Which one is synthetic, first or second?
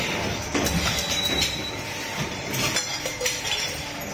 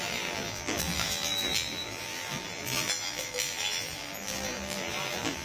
second